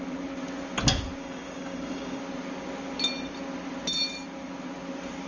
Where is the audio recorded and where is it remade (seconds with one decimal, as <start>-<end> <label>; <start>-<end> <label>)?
0.0-1.2 recorded; 1.2-2.2 remade; 2.2-5.3 recorded